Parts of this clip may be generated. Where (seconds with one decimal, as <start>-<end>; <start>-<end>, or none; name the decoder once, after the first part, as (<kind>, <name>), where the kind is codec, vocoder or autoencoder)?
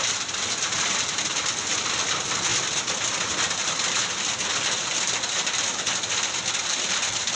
0.0-2.5 (vocoder, BigVGAN v2); 6.5-7.4